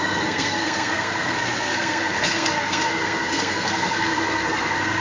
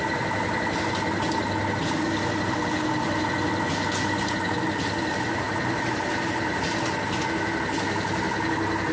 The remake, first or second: first